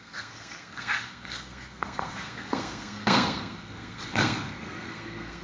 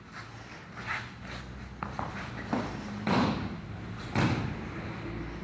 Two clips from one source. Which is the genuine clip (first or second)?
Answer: second